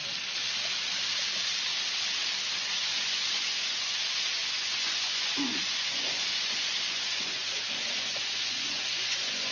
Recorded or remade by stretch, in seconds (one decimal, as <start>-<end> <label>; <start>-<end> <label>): 0.0-2.5 recorded; 2.5-9.5 remade